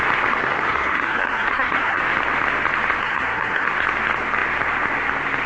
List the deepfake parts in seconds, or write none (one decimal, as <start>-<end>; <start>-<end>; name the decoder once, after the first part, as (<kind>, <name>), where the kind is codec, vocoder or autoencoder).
0.4-2.0 (codec, SNAC); 3.0-3.7